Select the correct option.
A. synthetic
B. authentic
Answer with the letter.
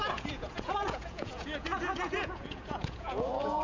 A